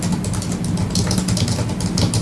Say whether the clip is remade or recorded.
recorded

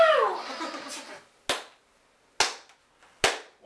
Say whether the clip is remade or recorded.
recorded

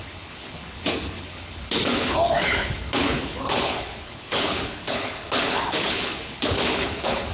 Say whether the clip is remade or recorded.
remade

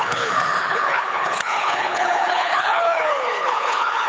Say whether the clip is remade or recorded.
remade